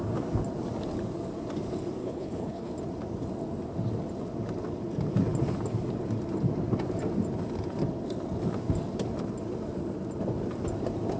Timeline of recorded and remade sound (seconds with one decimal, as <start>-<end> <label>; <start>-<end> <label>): 0.0-2.0 recorded; 2.0-2.7 remade; 2.7-11.2 recorded